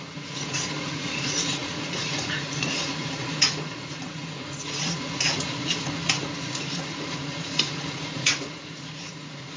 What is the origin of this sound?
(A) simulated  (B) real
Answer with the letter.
A